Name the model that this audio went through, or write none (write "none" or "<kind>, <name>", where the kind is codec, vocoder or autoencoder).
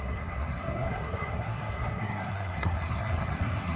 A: codec, SNAC